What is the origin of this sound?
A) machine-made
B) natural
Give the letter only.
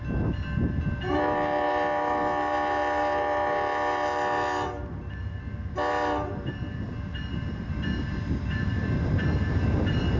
B